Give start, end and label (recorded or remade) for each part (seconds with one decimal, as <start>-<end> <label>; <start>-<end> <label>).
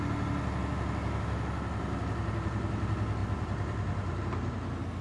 0.0-3.2 recorded; 3.2-4.2 remade; 4.2-5.0 recorded